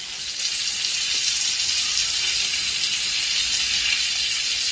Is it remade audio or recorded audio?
recorded